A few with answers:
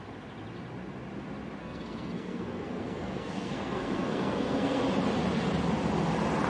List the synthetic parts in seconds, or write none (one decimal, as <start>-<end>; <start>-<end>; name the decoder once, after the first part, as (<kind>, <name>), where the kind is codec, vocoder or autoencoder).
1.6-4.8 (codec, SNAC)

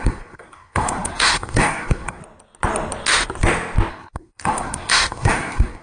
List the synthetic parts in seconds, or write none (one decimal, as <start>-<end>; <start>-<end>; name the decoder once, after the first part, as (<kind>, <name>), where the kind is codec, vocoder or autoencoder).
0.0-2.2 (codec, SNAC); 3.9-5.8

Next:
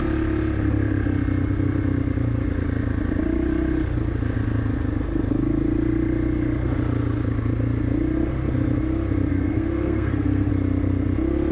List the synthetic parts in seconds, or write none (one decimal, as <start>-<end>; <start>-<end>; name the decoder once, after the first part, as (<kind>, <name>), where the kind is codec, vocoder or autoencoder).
9.3-10.5 (codec, SNAC)